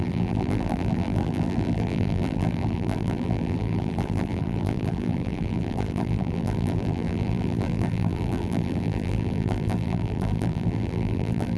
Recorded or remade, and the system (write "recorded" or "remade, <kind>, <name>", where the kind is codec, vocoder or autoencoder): remade, vocoder, BigVGAN v2